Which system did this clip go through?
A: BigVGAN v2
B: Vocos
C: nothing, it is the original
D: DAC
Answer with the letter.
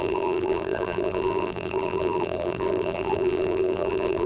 A